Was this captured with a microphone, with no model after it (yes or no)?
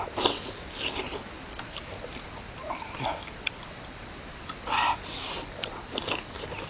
yes